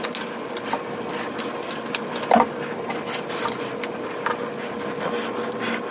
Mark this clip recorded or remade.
recorded